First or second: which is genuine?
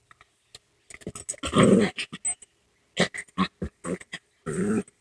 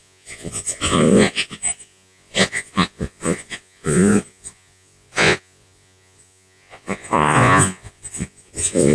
first